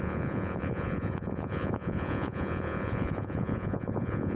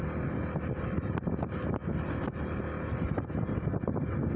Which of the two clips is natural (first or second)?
second